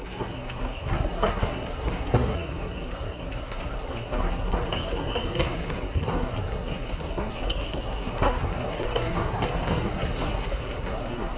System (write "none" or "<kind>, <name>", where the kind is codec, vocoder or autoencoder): codec, SNAC